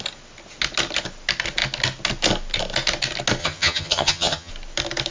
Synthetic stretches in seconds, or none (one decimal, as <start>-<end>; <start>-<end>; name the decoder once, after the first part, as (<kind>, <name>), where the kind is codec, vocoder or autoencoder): 3.4-4.5 (vocoder, HiFi-GAN)